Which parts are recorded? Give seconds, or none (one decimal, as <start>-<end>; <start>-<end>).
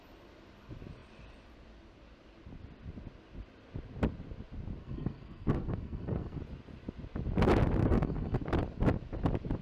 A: 0.0-4.8; 6.4-7.8; 8.4-9.6